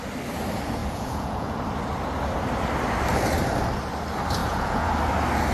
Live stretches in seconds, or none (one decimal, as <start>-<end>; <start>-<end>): 0.0-0.8; 1.6-4.4; 4.9-5.5